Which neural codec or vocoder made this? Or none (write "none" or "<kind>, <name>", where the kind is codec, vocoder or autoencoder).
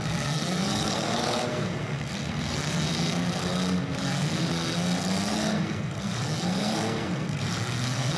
codec, SNAC